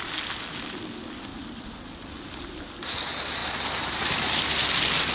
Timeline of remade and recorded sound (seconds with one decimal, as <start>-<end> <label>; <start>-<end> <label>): 0.0-3.4 recorded; 3.4-4.0 remade; 4.0-5.1 recorded